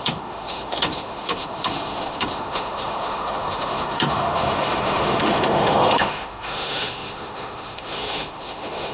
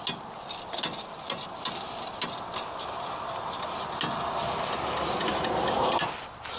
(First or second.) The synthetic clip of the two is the first